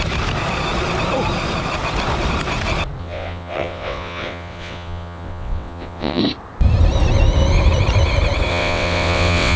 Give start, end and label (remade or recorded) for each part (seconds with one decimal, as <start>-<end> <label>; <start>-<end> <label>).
0.0-3.0 recorded; 3.0-6.2 remade; 6.2-8.5 recorded; 8.5-9.6 remade